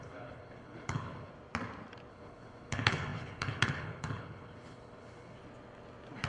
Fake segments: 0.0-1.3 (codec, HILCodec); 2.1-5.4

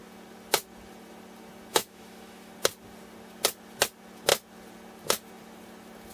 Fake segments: 1.7-2.5 (autoencoder, DAC-VAE)

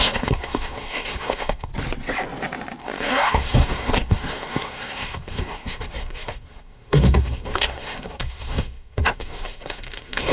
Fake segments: 0.0-1.7 (codec, SNAC); 2.8-10.3

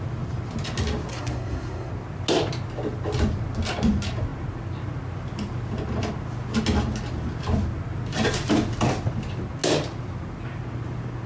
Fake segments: 1.1-1.9 (codec, SNAC)

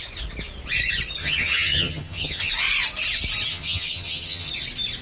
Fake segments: 1.2-2.5 (vocoder, HiFi-GAN); 3.5-4.5

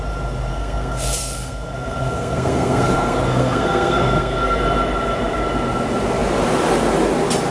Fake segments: 0.5-4.6 (codec, SNAC)